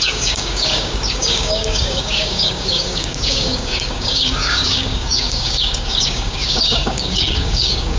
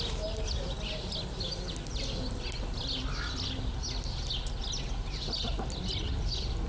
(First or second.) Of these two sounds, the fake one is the first